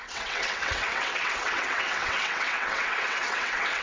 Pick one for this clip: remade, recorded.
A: remade